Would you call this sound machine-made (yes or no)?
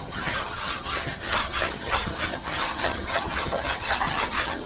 yes